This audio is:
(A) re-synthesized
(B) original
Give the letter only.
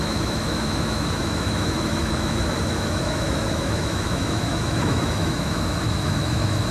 A